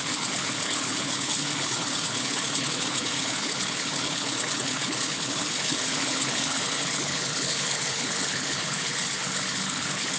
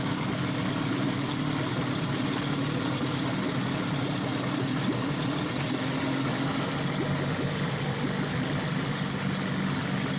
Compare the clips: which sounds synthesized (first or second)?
first